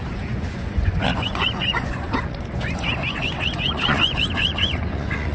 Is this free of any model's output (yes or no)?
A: no